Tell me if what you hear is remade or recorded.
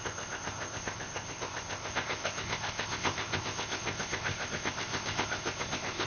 remade